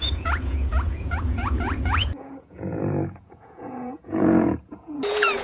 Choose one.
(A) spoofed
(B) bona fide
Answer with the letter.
A